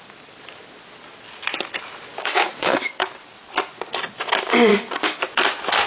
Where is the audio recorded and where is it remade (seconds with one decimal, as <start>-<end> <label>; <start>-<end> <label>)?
0.0-2.1 recorded; 2.1-3.1 remade; 3.1-4.7 recorded; 4.7-5.2 remade; 5.2-5.9 recorded